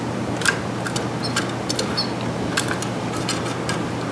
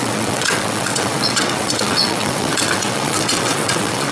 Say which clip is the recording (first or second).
first